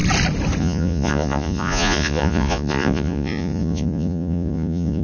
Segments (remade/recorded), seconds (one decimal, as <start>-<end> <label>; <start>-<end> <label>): 0.0-0.6 recorded; 0.6-5.0 remade